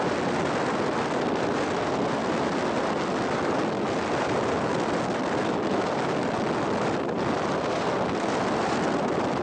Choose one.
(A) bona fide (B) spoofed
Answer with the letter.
A